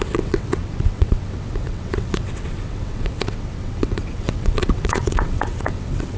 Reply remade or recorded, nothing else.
remade